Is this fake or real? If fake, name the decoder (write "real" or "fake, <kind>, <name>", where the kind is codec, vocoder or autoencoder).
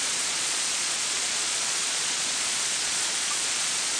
fake, vocoder, Vocos